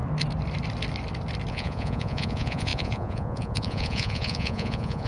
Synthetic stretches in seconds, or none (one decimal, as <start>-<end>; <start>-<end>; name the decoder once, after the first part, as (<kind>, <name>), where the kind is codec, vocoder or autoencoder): 1.5-5.1 (vocoder, Vocos)